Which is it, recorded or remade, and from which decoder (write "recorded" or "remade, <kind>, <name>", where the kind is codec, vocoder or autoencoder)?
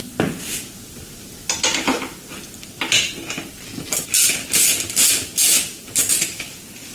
recorded